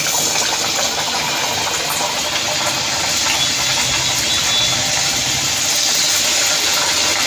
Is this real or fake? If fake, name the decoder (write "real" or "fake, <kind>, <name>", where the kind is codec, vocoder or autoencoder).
real